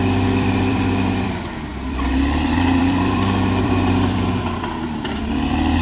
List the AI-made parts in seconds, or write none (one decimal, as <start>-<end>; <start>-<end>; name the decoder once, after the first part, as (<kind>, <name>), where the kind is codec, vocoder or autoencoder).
0.0-5.8 (vocoder, BigVGAN v2)